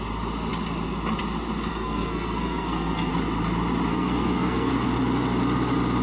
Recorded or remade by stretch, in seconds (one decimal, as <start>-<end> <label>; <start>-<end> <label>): 0.0-1.7 recorded; 1.7-3.1 remade; 3.1-3.9 recorded; 3.9-4.7 remade; 4.7-6.0 recorded